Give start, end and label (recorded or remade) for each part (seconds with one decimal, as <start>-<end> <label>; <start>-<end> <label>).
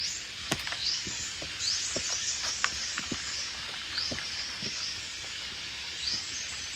0.0-0.4 recorded; 0.4-1.6 remade; 1.6-2.2 recorded; 2.2-6.3 remade; 6.3-6.8 recorded